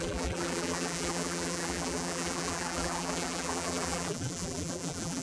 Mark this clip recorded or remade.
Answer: remade